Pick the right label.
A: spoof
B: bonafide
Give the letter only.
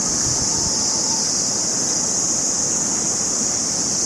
B